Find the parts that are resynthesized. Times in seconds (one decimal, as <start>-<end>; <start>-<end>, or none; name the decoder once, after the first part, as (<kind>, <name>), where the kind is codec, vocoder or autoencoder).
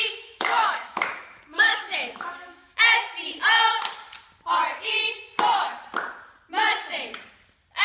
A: 0.0-2.8 (autoencoder, DAC-VAE)